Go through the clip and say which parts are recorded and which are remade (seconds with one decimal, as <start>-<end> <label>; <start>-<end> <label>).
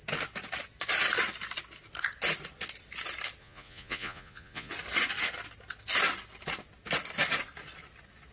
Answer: 0.0-3.4 recorded; 3.4-4.7 remade; 4.7-8.3 recorded